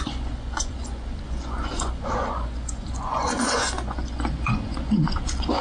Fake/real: fake